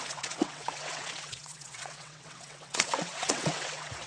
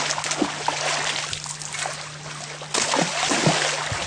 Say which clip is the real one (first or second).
second